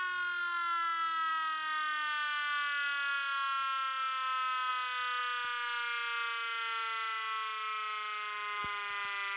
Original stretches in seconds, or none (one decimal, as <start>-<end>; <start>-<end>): 0.0-9.4